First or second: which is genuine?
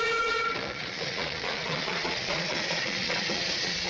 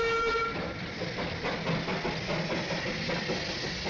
second